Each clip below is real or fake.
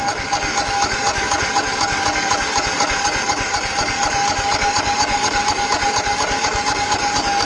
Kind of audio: fake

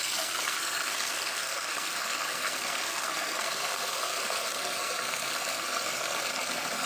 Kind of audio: fake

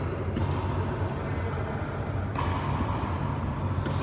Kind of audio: real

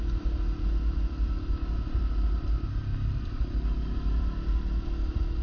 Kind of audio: real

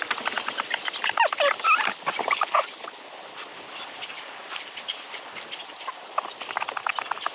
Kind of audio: real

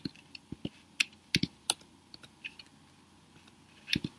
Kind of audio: real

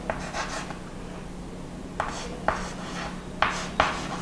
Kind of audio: real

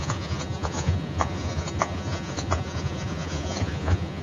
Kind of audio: fake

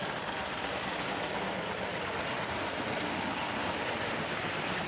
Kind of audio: real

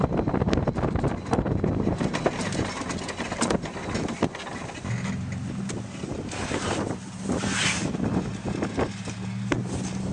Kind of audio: real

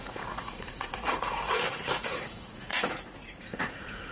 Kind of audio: fake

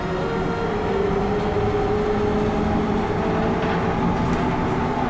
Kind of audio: real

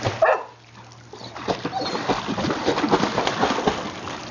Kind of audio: real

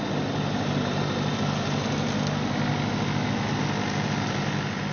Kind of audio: real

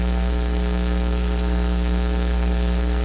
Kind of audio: fake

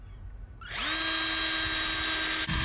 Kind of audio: real